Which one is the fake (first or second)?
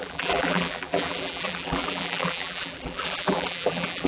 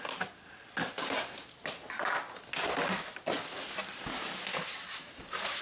first